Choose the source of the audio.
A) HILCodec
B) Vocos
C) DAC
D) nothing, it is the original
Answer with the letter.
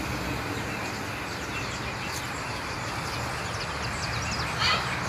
D